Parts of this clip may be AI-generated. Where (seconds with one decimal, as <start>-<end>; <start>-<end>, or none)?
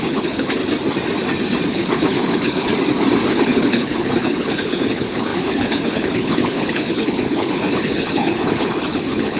0.0-0.6; 1.7-2.7; 3.3-9.4